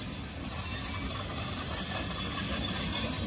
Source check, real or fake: real